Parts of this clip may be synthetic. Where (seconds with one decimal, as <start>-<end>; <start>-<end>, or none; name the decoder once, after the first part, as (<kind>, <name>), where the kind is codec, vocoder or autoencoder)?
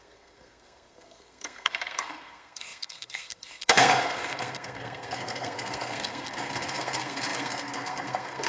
0.0-8.5 (codec, SNAC)